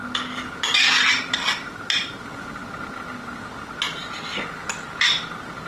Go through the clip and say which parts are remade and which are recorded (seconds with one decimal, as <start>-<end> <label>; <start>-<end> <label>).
0.0-1.3 remade; 1.3-5.7 recorded